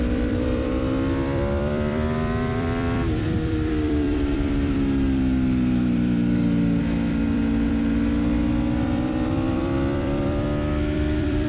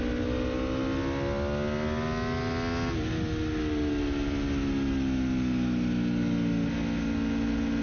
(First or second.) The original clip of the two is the second